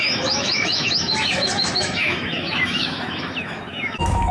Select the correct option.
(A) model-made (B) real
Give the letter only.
A